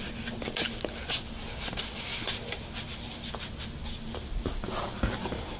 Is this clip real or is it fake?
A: real